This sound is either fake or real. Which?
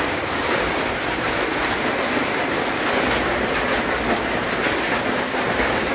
real